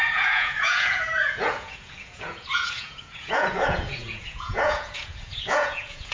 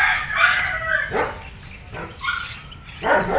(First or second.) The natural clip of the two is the second